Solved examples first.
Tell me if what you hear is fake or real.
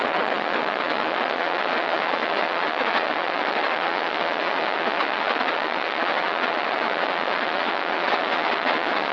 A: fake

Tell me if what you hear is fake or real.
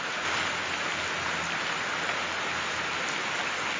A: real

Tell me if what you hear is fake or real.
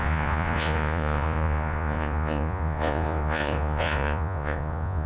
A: fake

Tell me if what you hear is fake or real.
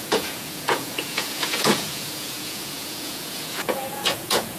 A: fake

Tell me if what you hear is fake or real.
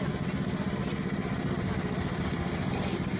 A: real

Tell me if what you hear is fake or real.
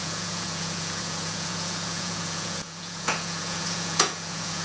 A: fake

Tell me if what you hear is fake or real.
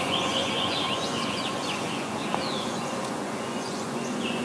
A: fake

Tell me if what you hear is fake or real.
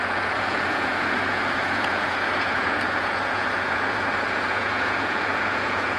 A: fake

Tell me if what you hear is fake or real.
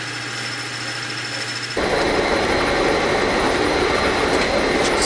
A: real